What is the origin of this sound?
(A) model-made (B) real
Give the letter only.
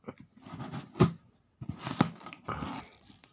B